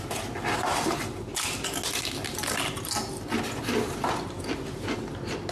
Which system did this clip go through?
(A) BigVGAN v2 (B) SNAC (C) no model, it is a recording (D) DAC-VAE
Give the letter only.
C